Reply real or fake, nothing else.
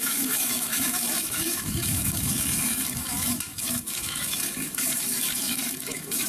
fake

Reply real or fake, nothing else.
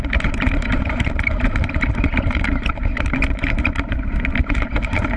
fake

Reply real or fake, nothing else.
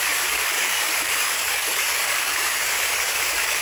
fake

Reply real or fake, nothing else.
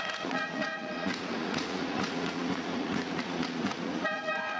fake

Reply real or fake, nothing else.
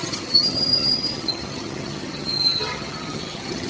fake